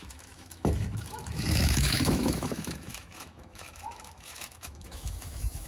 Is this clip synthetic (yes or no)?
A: yes